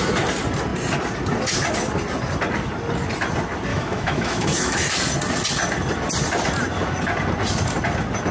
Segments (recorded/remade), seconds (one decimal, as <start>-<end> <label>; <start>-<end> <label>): 0.0-3.7 recorded; 3.7-4.9 remade; 4.9-8.3 recorded